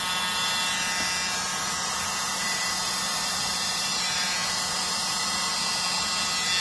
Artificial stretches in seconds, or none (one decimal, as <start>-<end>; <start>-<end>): 1.5-5.5